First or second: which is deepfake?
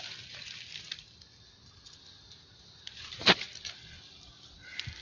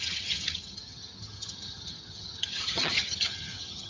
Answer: second